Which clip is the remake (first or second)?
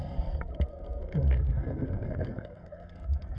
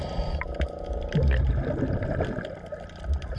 first